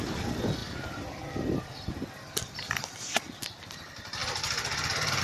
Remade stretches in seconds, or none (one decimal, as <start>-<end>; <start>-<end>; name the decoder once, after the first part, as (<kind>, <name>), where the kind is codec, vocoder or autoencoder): 0.0-5.2 (vocoder, BigVGAN v2)